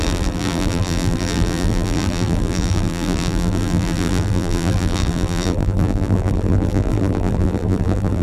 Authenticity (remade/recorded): remade